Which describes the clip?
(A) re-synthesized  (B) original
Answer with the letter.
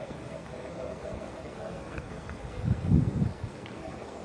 A